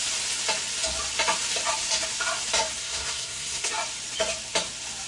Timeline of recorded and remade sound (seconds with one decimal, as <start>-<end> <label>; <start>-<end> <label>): 0.0-2.8 recorded; 2.8-3.7 remade; 3.7-5.1 recorded